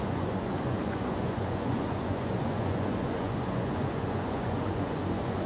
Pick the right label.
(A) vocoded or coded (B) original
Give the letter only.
A